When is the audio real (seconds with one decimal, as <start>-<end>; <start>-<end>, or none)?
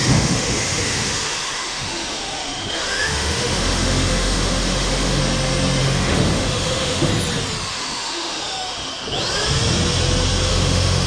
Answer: 5.2-5.8; 7.1-7.7; 8.9-10.5